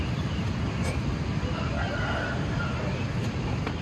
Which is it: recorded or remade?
recorded